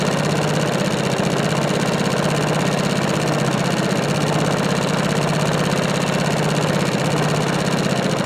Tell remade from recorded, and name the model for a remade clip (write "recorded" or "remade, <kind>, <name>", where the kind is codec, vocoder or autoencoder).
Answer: recorded